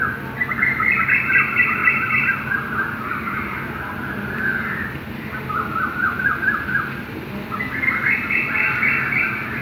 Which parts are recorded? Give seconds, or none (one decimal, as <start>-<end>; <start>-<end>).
0.0-9.6